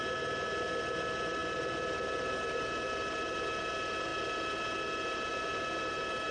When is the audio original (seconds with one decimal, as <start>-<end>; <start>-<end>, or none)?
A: 0.0-6.3